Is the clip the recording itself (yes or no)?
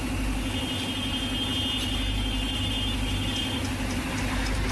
yes